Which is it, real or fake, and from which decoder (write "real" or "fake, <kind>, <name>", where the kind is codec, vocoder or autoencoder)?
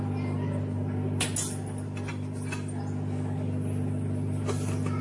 real